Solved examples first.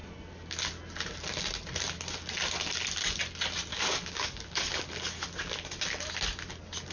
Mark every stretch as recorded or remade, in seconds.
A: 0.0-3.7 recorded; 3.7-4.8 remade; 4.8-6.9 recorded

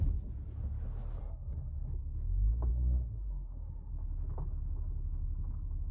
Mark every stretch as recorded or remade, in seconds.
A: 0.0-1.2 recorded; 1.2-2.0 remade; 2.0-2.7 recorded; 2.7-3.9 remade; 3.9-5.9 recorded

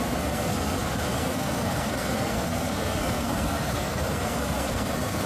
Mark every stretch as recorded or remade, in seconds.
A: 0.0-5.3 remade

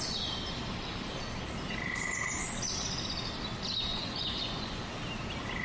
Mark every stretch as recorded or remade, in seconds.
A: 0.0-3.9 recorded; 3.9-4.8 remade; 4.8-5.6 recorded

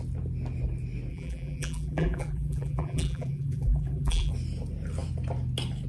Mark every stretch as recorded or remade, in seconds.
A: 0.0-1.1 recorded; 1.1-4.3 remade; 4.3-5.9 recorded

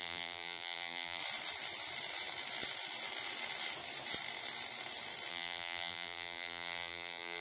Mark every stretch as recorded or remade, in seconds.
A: 0.0-1.2 remade; 1.2-5.3 recorded; 5.3-7.4 remade

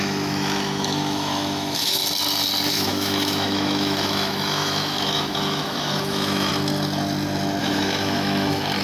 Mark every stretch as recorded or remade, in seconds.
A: 0.0-2.0 remade; 2.0-2.7 recorded; 2.7-6.5 remade; 6.5-7.6 recorded; 7.6-8.8 remade